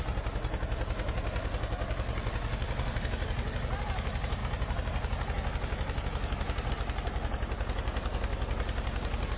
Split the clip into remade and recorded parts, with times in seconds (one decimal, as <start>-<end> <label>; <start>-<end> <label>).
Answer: 0.0-9.4 recorded